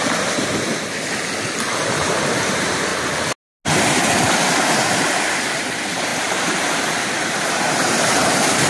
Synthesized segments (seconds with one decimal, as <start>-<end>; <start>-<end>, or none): 0.0-0.7; 1.8-2.9; 4.8-8.7